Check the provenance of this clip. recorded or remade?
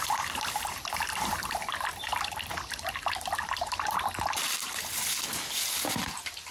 recorded